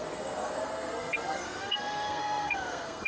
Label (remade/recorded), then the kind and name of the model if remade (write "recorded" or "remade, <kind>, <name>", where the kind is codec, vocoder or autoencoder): remade, codec, SNAC